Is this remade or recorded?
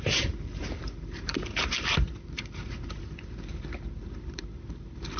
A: remade